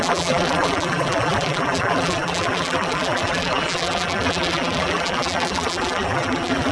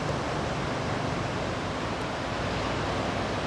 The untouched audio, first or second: second